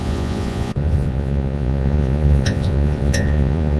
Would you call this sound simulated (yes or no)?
yes